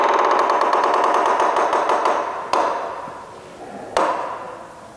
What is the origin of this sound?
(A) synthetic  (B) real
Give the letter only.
B